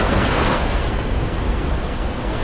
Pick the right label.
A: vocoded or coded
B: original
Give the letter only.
A